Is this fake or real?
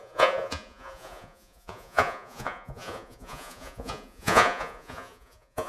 fake